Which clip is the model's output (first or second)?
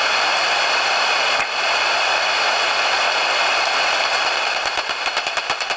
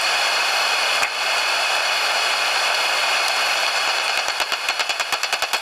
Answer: first